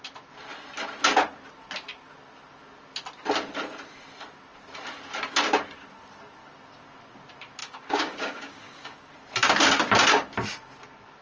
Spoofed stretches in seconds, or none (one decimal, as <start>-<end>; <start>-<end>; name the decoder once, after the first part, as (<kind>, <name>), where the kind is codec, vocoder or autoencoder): 7.6-9.1 (codec, DAC)